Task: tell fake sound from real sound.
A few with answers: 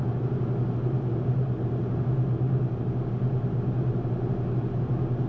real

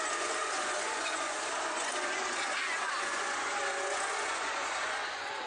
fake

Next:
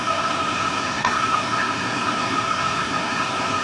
fake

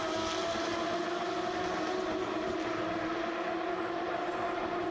real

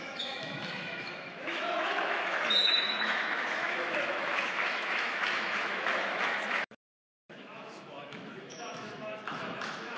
fake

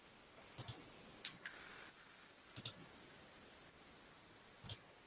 real